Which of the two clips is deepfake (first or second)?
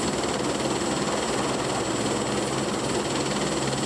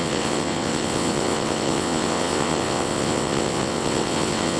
second